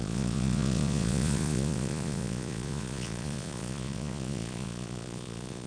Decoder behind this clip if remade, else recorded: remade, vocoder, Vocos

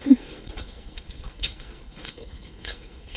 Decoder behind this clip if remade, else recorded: remade, codec, SNAC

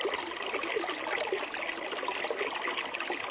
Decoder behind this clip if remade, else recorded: recorded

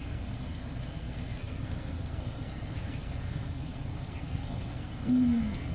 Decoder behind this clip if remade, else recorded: remade, codec, SNAC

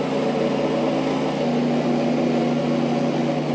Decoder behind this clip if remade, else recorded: recorded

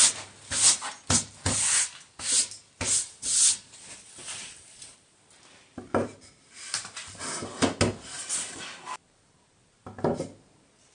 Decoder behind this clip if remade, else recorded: recorded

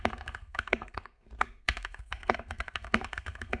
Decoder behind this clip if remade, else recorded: remade, codec, SNAC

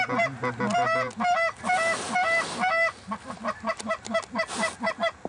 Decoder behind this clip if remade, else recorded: recorded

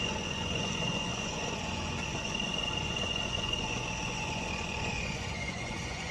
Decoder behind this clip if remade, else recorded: remade, vocoder, Vocos